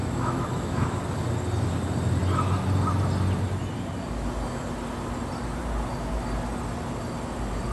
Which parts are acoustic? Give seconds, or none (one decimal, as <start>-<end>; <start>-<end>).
1.0-7.7